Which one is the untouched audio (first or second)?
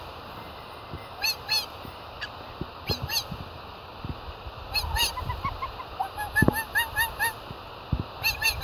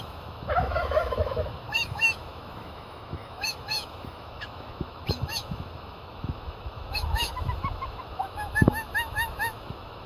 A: first